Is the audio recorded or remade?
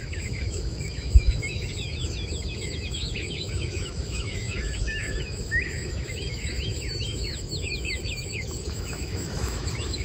remade